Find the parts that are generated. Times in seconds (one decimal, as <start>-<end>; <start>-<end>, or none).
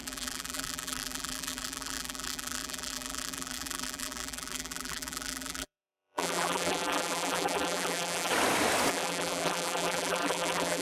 0.0-8.3; 8.9-10.8